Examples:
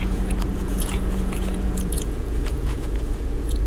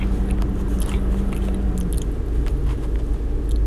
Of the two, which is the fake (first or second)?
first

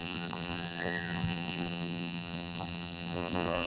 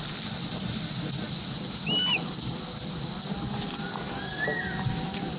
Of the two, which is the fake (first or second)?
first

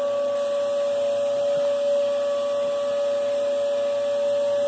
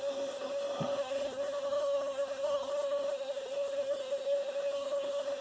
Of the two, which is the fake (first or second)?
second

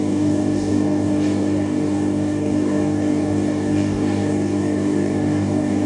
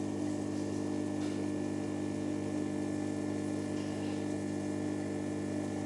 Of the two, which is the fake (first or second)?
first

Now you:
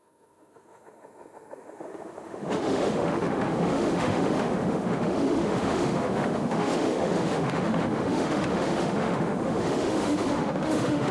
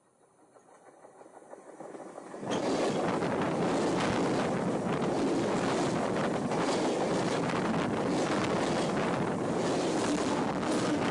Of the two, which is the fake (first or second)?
first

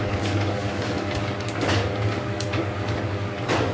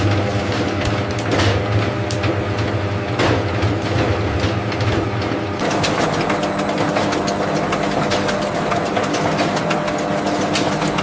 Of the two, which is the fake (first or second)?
first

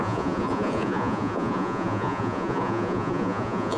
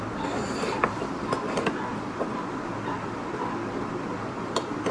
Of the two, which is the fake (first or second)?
first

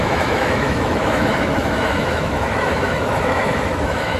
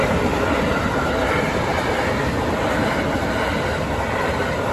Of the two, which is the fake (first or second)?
first